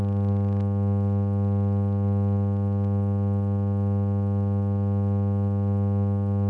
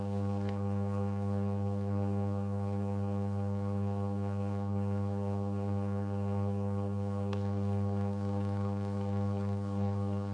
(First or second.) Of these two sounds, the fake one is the second